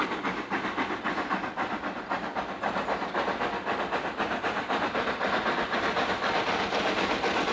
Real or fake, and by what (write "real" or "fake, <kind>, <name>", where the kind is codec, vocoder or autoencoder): real